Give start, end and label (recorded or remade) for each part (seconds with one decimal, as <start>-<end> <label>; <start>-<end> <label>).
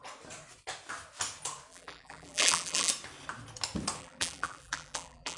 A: 0.0-1.7 recorded; 1.7-2.9 remade; 2.9-4.0 recorded; 4.0-5.4 remade